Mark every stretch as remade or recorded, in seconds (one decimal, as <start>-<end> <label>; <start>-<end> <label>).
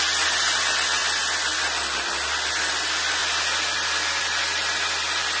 0.0-5.4 recorded